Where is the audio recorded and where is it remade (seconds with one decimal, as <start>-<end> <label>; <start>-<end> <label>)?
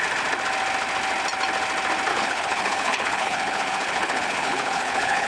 0.0-2.1 recorded; 2.1-5.3 remade